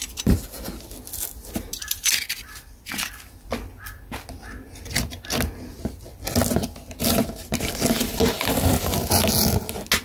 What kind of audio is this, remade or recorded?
recorded